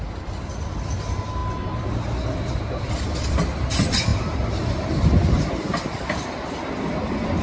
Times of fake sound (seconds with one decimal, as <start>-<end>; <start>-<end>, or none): 0.0-1.4; 2.8-7.4